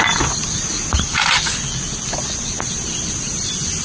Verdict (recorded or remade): recorded